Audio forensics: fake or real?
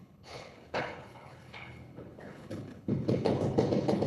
fake